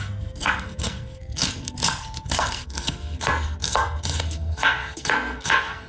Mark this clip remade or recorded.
remade